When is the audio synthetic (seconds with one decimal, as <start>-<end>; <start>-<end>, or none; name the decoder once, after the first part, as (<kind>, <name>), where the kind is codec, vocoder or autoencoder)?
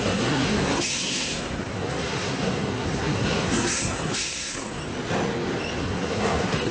0.0-4.8 (codec, SNAC); 5.8-6.7